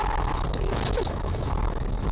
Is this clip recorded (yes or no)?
no